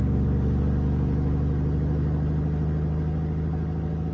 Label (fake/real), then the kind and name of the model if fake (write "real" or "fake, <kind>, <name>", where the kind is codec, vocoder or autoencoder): real